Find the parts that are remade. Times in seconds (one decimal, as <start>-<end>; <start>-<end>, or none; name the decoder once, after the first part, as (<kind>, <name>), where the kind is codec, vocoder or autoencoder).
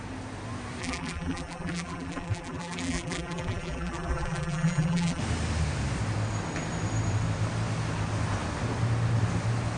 0.8-5.2 (vocoder, BigVGAN v2)